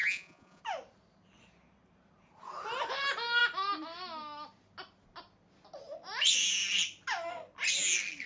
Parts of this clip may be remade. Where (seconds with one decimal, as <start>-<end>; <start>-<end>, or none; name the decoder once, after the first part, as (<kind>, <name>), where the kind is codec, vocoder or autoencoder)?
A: 0.0-0.6 (vocoder, Vocos)